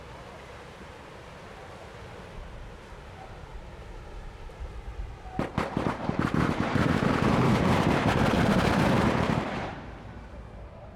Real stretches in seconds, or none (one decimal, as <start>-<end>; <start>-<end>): 3.5-4.1